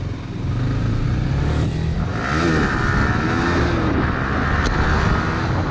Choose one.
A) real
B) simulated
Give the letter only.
A